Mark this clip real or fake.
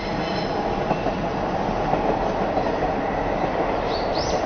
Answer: real